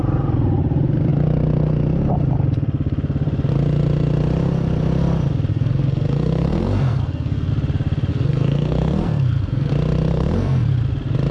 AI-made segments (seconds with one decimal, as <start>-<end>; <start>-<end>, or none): 5.5-7.5; 8.1-9.7; 10.1-10.7

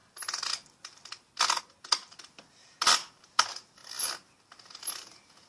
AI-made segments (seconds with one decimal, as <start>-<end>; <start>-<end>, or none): none

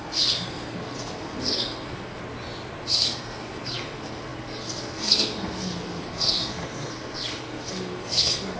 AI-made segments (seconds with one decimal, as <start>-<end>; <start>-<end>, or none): 0.0-2.2; 2.9-8.6